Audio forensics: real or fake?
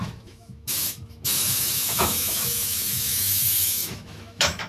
fake